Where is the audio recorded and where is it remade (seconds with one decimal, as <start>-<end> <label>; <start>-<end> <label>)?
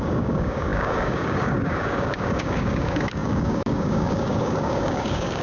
0.0-5.4 remade